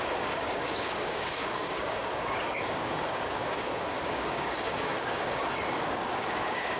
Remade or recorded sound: remade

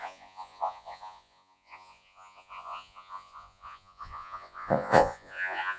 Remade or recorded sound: remade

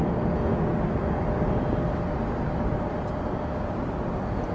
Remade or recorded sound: recorded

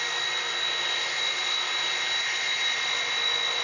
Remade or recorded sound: recorded